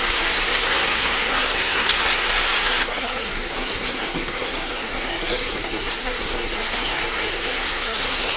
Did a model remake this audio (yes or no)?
yes